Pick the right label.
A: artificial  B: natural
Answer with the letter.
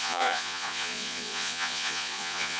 A